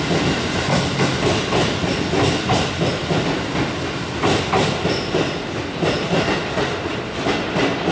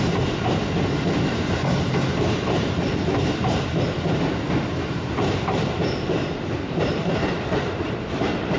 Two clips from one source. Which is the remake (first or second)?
second